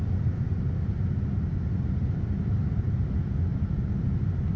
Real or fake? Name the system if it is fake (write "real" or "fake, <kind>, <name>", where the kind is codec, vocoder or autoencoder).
real